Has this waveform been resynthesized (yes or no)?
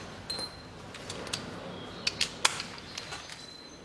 no